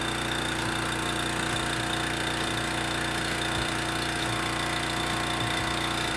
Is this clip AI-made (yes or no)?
no